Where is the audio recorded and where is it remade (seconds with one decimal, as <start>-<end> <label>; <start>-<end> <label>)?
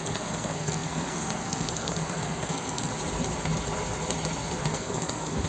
0.0-2.9 remade; 2.9-4.6 recorded; 4.6-5.5 remade